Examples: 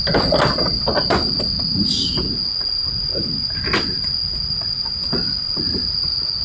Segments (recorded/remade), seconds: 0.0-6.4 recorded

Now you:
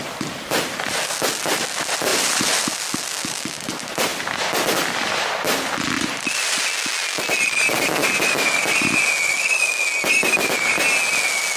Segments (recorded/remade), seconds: 0.0-2.1 recorded; 2.1-2.7 remade; 2.7-11.6 recorded

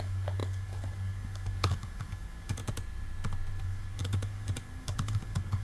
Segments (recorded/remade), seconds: 0.0-2.6 remade; 2.6-3.6 recorded; 3.6-5.6 remade